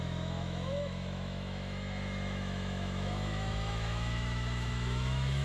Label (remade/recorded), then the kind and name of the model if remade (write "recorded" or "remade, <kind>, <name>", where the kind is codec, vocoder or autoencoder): remade, autoencoder, DAC-VAE